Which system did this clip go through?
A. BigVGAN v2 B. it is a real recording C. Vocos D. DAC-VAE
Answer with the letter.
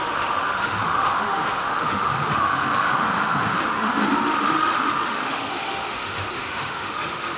D